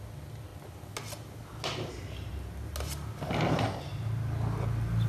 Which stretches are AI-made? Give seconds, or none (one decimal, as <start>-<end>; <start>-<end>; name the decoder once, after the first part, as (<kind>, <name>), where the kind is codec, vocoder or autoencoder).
none